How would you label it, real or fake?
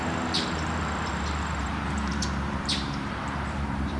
fake